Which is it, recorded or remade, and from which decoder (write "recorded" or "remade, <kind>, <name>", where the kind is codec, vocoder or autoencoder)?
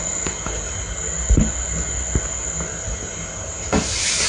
recorded